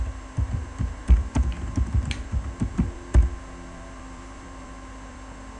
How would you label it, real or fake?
fake